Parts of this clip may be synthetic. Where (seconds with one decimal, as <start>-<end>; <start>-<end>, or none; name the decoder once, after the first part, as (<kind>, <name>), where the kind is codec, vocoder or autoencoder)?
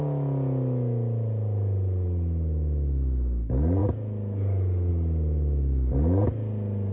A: none